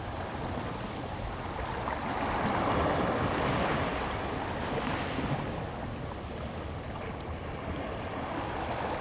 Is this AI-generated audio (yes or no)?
no